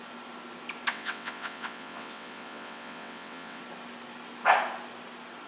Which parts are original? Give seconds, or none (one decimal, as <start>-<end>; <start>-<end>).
0.0-0.9; 3.6-5.5